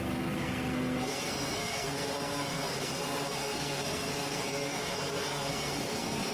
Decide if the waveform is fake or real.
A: fake